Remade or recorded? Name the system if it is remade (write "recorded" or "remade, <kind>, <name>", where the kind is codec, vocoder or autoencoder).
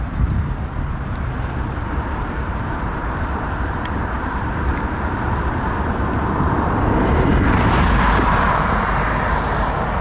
remade, vocoder, BigVGAN v2